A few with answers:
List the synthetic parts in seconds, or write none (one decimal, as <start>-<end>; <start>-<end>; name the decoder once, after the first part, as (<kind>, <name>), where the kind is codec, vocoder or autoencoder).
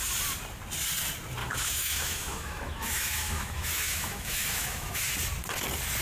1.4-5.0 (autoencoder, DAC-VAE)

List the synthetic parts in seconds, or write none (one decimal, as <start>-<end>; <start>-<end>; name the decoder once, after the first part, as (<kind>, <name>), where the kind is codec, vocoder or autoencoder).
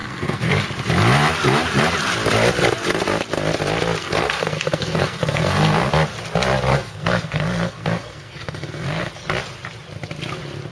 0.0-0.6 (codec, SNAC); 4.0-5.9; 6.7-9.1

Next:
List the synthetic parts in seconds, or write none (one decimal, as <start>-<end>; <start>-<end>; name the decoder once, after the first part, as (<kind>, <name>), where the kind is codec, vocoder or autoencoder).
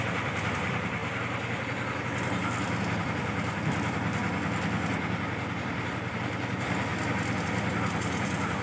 0.0-1.0 (vocoder, BigVGAN v2); 3.0-4.2; 5.6-6.9; 7.7-8.6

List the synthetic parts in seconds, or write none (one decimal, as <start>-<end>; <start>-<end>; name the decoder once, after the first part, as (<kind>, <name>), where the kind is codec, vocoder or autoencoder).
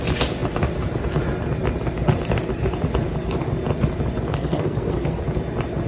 4.3-5.2 (codec, SNAC)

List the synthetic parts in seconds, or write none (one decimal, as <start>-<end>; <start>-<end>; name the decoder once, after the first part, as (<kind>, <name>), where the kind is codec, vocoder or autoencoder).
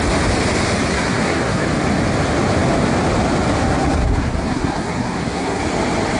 0.9-1.6 (codec, SNAC); 3.7-5.6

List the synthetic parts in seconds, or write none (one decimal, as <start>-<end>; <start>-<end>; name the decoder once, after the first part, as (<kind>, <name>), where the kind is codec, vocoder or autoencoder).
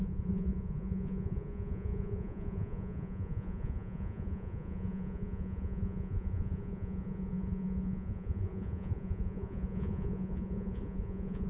0.0-11.5 (vocoder, Vocos)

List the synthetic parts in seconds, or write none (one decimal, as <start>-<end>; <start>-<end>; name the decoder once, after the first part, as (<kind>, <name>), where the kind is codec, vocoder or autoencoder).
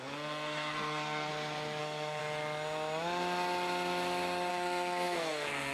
0.0-1.3 (codec, SNAC); 1.8-2.2; 4.5-5.7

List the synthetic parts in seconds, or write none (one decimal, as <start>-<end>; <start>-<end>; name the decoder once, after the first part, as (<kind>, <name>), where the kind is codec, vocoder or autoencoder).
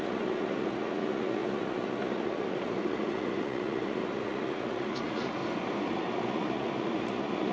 0.0-5.4 (vocoder, Vocos); 5.9-7.5